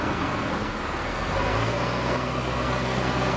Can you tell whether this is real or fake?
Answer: fake